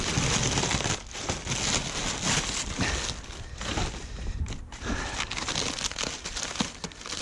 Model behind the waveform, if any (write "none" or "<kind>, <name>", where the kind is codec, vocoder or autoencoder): none